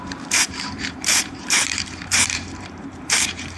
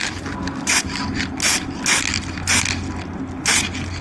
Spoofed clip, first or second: first